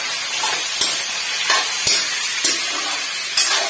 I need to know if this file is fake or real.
real